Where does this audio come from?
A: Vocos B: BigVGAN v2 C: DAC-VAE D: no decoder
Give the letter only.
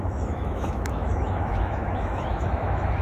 C